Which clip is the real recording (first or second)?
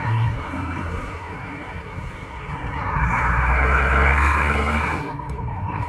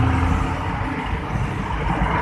second